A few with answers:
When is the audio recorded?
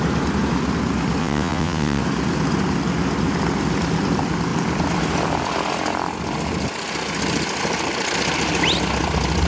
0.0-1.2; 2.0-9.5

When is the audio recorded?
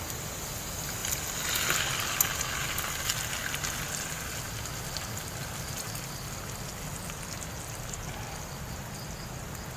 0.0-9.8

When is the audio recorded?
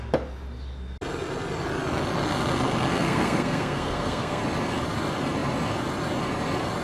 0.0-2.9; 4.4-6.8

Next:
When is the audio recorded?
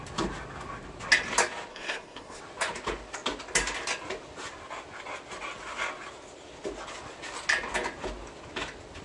0.0-1.7; 2.4-9.0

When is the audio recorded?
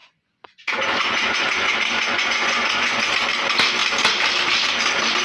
3.1-5.2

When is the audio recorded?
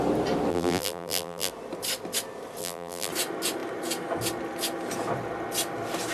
0.0-0.5; 1.5-2.6; 3.1-6.1